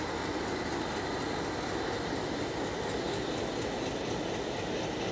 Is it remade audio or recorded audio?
recorded